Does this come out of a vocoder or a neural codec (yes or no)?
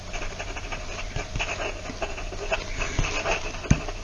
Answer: no